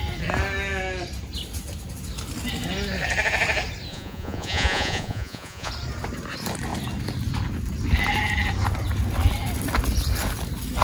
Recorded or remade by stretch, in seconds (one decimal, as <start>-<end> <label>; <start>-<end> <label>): 0.0-3.9 recorded; 3.9-5.7 remade; 5.7-10.8 recorded

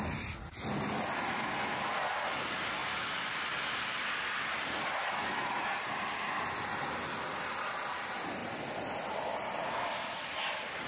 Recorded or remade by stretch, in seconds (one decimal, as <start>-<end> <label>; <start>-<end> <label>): 0.0-2.8 recorded; 2.8-6.3 remade; 6.3-8.4 recorded; 8.4-9.1 remade; 9.1-10.9 recorded